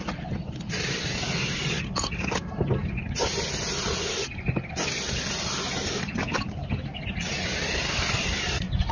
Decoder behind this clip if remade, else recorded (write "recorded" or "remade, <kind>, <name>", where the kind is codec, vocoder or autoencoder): recorded